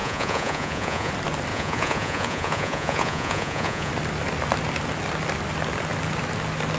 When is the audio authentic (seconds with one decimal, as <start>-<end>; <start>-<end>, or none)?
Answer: 1.1-1.5; 3.9-6.8

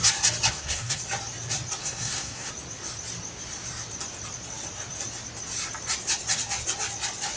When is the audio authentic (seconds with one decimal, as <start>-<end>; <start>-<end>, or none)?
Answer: 0.0-0.5; 1.0-1.8; 2.5-7.4

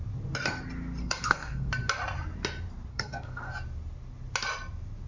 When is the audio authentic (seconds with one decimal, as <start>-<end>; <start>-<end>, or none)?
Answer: 0.0-1.0; 1.7-2.9; 3.5-5.1

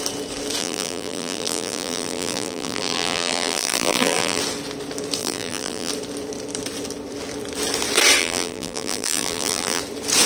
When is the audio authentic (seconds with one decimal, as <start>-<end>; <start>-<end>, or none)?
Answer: 0.0-0.6; 4.4-5.2; 5.9-8.2; 9.8-10.3